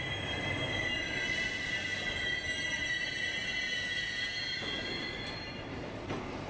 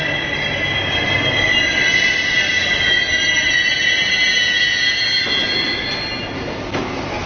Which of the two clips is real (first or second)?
second